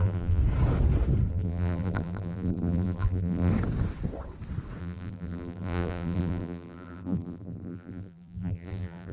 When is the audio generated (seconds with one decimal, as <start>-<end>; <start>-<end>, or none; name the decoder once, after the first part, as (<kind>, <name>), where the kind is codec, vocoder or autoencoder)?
0.0-0.4 (vocoder, BigVGAN v2); 1.3-3.5; 4.8-9.1